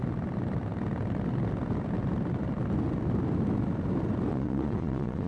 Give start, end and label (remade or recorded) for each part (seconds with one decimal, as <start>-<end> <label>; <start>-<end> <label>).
0.0-4.3 recorded; 4.3-5.3 remade